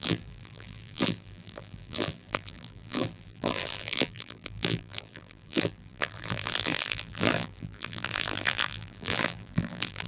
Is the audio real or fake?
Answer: fake